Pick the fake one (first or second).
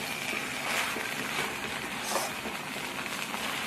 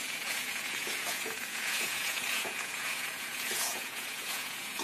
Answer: second